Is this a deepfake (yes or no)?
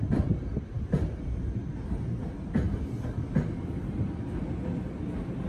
no